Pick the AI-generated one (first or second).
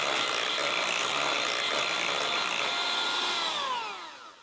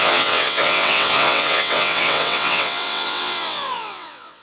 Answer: second